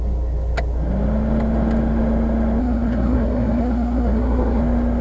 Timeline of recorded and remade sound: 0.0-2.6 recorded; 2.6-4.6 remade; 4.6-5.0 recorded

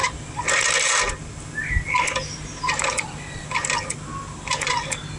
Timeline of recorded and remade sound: 0.0-5.2 recorded

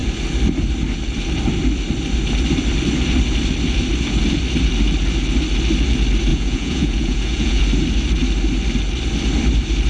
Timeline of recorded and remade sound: 0.0-6.3 recorded; 6.3-7.6 remade; 7.6-9.9 recorded

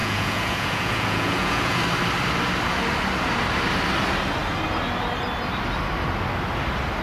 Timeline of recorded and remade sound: 0.0-1.8 remade; 1.8-7.0 recorded

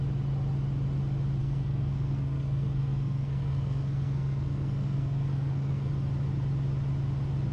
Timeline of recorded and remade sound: 0.0-1.4 recorded; 1.4-5.9 remade; 5.9-7.5 recorded